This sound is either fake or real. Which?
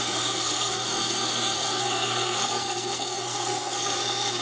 fake